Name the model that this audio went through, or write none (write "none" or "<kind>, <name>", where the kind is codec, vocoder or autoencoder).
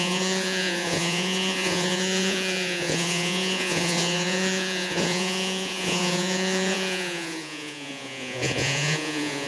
vocoder, Vocos